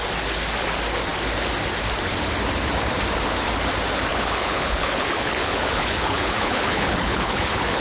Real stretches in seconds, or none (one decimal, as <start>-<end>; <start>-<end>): 0.0-4.1